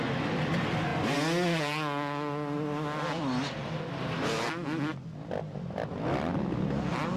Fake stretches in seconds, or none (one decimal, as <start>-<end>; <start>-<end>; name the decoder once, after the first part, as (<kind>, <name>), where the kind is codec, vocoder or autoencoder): none